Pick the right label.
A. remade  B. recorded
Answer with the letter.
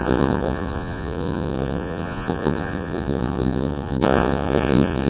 A